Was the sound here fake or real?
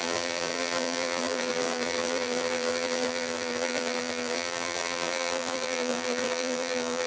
fake